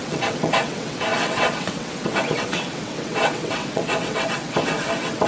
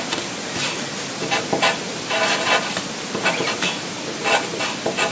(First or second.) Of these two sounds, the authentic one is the second